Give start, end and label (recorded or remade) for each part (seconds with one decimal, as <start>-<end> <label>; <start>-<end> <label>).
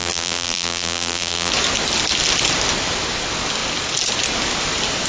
0.0-1.5 remade; 1.5-5.1 recorded